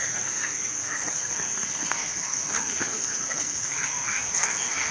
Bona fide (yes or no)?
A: no